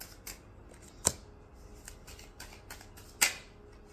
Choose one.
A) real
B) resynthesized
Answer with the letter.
A